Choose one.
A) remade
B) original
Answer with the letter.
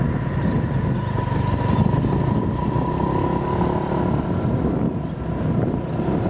B